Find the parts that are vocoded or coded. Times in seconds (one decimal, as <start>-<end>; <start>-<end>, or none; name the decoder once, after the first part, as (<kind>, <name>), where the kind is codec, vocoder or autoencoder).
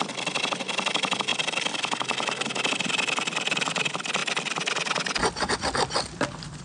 none